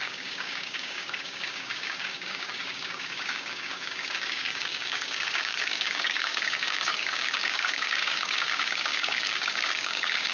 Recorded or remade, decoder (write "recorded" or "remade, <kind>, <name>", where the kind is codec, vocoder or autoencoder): remade, codec, DAC